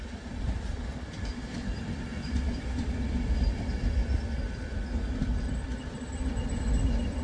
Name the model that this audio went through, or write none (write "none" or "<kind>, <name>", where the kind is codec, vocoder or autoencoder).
vocoder, BigVGAN v2